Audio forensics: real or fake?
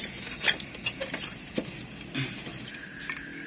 real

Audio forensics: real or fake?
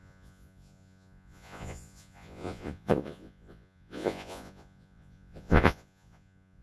fake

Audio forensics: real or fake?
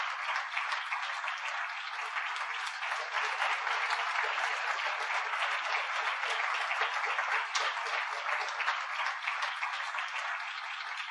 real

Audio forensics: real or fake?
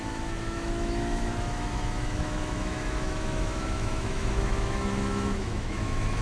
fake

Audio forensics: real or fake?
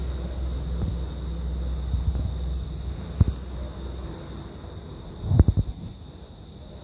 real